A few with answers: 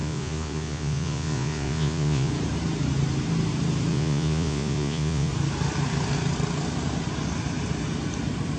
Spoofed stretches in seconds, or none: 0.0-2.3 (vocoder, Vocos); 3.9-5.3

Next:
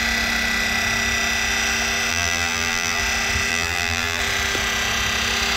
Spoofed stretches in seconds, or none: 2.1-3.0 (vocoder, BigVGAN v2); 3.5-4.2

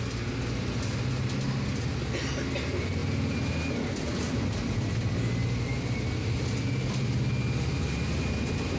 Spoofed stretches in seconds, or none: none

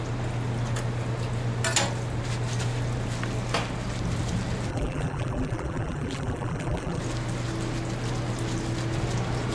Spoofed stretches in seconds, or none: 4.7-7.0 (vocoder, BigVGAN v2)

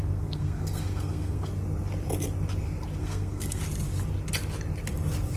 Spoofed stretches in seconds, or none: 0.0-1.5 (codec, SNAC); 3.0-3.6